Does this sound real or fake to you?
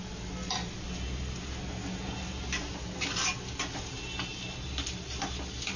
real